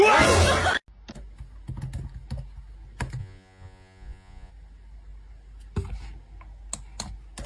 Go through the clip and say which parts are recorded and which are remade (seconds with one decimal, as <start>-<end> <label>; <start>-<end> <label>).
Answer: 0.0-3.2 recorded; 3.2-4.5 remade; 4.5-7.5 recorded